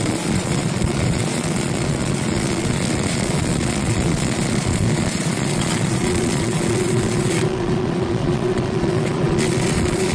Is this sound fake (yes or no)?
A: yes